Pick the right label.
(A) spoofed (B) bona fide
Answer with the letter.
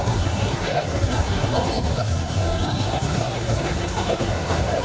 A